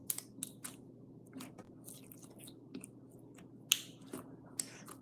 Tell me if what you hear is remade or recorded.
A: recorded